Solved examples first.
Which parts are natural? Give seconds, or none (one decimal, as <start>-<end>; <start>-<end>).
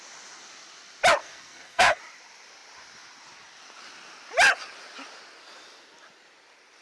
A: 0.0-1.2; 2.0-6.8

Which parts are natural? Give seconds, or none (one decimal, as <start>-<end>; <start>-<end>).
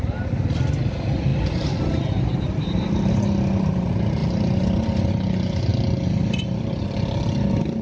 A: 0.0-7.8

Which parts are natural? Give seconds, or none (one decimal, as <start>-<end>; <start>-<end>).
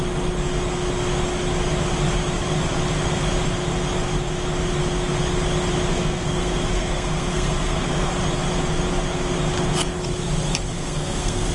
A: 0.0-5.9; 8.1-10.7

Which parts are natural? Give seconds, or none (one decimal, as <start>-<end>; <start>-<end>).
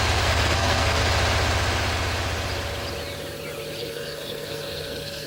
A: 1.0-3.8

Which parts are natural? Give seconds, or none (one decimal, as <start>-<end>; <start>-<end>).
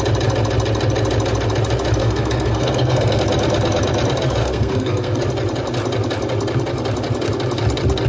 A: 0.0-2.0; 3.2-4.4; 5.2-8.1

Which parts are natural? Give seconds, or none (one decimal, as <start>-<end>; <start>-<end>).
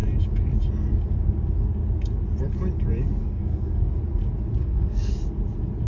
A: 0.0-3.2; 3.9-4.6; 5.1-5.9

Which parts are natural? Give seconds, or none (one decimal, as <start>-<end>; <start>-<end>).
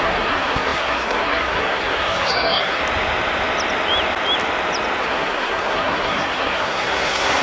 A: 2.8-5.0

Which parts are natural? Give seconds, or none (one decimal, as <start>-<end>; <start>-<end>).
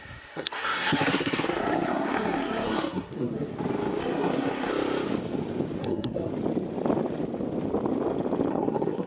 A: 3.5-4.0; 4.7-5.8; 6.3-8.5